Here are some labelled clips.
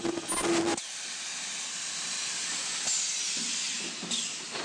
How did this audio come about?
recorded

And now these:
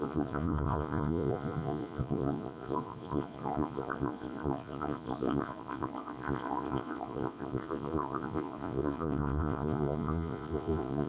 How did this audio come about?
remade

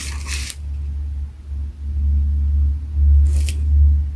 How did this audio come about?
recorded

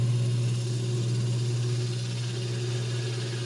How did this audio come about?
recorded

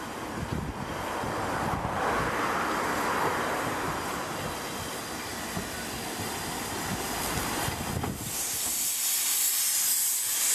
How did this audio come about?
recorded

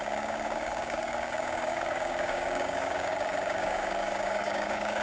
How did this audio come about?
remade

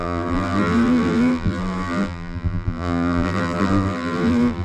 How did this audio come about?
remade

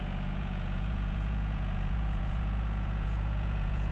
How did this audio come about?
remade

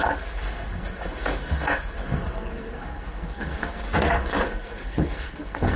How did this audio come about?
remade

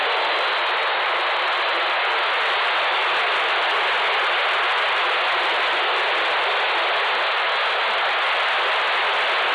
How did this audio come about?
recorded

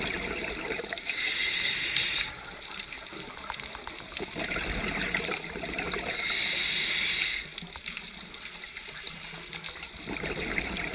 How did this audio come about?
recorded